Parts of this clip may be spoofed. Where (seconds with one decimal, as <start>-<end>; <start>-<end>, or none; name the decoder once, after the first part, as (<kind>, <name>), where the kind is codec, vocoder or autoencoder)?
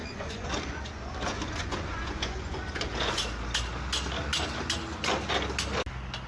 0.0-3.2 (vocoder, Vocos)